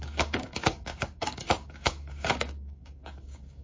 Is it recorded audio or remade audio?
remade